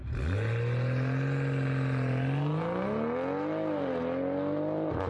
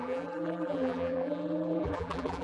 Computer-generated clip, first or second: second